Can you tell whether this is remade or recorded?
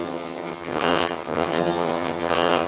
remade